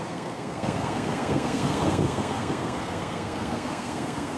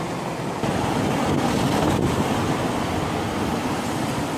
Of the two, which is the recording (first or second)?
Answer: second